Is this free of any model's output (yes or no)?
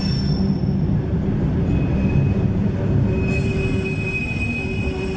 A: yes